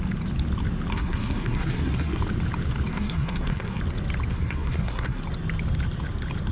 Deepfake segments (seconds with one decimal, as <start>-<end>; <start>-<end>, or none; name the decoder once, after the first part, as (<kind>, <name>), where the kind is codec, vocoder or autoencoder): 0.9-2.2 (codec, SNAC); 2.9-3.8; 4.3-5.2

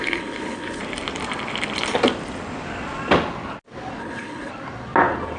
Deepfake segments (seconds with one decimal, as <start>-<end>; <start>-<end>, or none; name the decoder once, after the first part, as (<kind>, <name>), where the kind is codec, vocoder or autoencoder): 0.0-0.8 (codec, HILCodec); 4.0-4.5

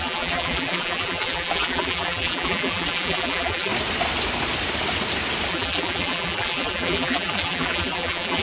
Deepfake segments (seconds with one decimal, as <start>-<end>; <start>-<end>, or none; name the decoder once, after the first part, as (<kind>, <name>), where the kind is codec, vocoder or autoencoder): 0.0-3.7 (vocoder, BigVGAN v2); 5.5-8.4